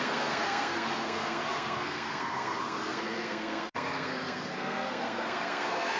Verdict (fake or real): fake